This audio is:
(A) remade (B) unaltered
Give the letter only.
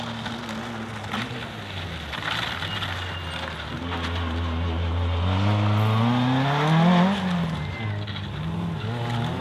B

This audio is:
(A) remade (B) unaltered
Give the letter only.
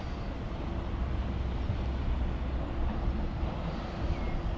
B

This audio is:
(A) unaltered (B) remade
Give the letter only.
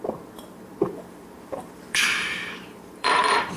B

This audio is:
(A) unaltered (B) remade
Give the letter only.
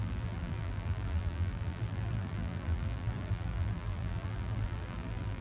B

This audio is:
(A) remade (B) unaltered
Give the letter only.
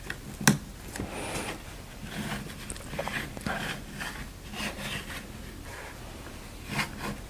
B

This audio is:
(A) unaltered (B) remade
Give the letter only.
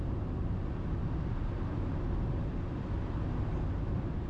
A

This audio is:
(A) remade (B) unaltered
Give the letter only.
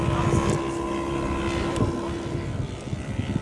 B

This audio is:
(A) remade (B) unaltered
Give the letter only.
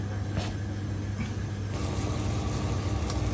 B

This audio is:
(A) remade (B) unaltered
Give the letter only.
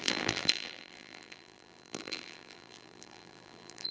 A